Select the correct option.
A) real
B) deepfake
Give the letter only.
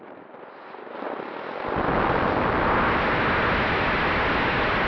A